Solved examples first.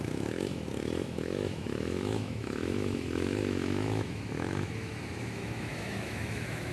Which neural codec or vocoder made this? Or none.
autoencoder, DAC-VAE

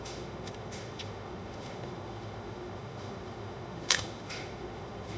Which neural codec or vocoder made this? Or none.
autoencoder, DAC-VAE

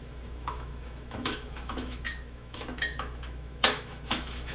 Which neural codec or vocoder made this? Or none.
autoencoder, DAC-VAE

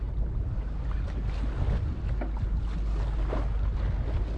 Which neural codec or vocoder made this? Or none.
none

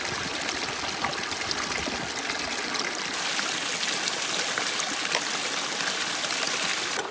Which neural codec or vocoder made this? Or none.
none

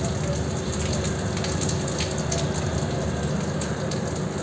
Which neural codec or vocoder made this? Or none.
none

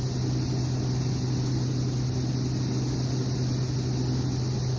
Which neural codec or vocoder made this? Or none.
none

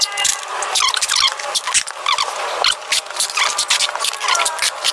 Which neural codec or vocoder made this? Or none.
none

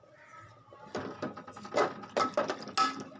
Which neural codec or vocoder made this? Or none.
none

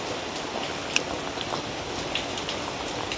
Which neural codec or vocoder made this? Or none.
none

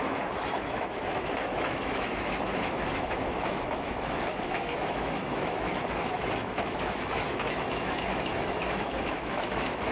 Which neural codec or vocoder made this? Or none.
autoencoder, DAC-VAE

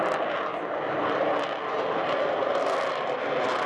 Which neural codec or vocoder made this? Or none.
none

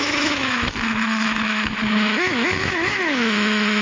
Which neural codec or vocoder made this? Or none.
autoencoder, DAC-VAE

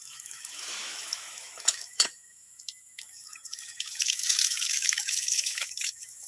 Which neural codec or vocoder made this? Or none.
autoencoder, DAC-VAE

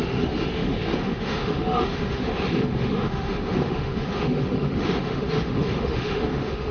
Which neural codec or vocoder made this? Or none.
autoencoder, DAC-VAE